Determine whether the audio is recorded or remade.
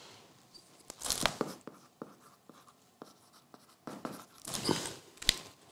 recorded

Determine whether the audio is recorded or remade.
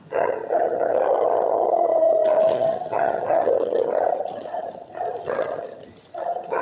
remade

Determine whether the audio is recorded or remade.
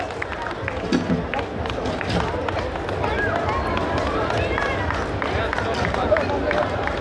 recorded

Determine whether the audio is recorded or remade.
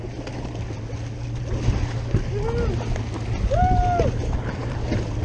recorded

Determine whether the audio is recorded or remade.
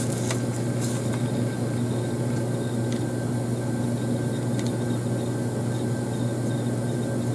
recorded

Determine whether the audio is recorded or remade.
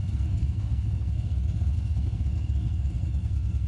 remade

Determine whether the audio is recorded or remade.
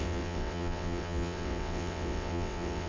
remade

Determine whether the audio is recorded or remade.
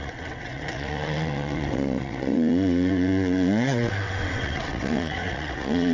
remade